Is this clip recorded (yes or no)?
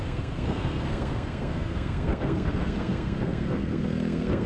no